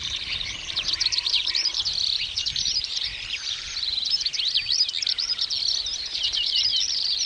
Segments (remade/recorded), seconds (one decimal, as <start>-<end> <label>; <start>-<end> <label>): 0.0-4.3 remade; 4.3-5.6 recorded; 5.6-6.7 remade; 6.7-7.3 recorded